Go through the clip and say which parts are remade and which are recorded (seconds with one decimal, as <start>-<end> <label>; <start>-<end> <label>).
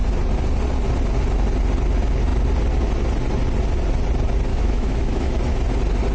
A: 0.0-4.5 recorded; 4.5-5.3 remade; 5.3-6.1 recorded